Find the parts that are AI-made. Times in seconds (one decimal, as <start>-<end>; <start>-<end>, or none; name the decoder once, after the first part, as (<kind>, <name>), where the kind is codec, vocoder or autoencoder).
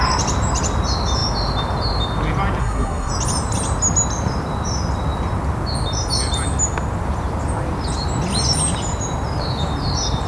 2.6-3.1 (codec, SNAC)